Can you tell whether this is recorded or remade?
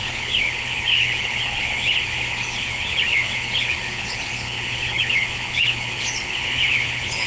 remade